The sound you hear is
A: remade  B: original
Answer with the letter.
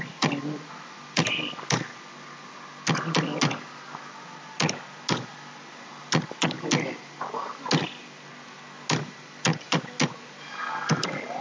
B